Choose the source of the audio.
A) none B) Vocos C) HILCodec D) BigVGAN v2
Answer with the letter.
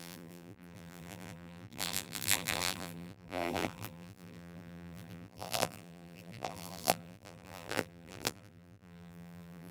D